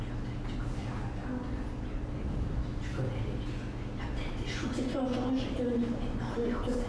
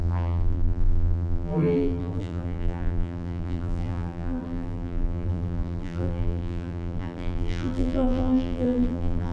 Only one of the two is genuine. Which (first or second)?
first